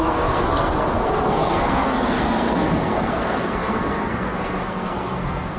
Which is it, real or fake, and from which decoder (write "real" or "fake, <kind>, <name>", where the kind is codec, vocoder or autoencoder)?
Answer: fake, codec, SNAC